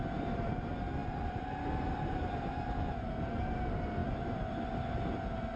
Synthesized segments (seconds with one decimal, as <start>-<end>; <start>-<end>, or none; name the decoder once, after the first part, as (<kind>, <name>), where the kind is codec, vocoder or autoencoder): 1.0-2.6 (vocoder, BigVGAN v2)